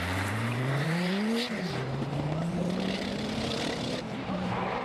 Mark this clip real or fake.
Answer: fake